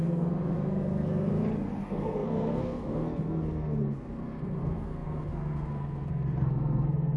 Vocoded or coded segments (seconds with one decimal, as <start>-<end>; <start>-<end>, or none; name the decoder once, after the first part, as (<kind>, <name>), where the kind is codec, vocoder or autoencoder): 0.0-1.3 (codec, SNAC); 1.8-7.2